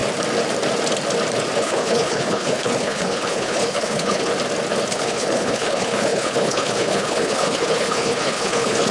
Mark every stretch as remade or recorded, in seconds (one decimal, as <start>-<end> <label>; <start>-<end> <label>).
0.0-1.6 recorded; 1.6-4.3 remade; 4.3-4.9 recorded; 4.9-8.9 remade